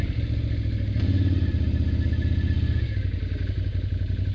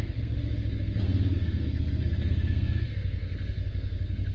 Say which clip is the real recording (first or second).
first